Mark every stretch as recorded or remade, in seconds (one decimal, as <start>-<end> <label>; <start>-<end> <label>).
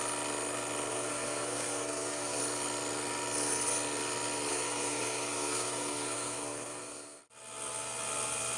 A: 0.0-0.9 recorded; 0.9-2.4 remade; 2.4-4.5 recorded; 4.5-7.2 remade; 7.2-8.6 recorded